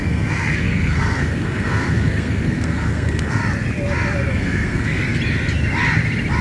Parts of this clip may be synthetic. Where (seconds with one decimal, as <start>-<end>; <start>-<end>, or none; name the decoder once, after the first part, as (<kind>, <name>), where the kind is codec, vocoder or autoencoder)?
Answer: 0.0-3.4 (codec, SNAC); 4.3-5.0